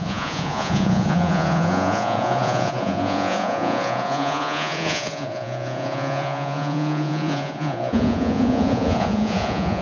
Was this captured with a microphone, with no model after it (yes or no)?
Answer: no